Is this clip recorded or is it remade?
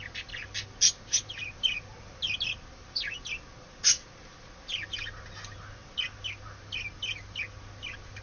recorded